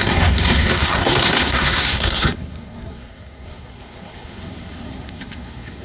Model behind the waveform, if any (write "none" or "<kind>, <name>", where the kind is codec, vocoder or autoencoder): codec, SNAC